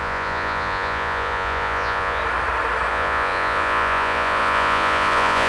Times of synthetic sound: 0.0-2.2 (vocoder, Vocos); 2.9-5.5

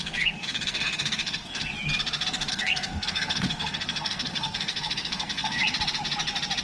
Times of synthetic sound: 0.0-1.7 (codec, SNAC); 2.5-5.6

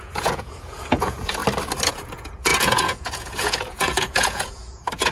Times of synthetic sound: 0.0-1.4 (vocoder, Vocos); 1.9-5.1